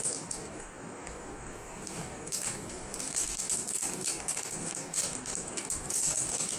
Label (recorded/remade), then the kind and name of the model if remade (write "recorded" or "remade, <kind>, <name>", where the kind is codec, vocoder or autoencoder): remade, codec, DAC